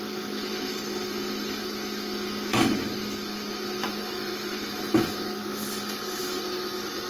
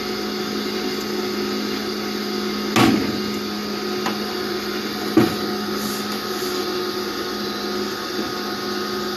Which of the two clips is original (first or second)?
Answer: second